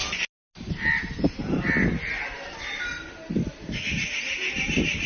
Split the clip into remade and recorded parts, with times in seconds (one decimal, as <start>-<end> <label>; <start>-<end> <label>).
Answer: 0.0-5.1 recorded